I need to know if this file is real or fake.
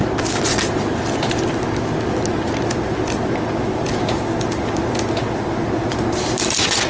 real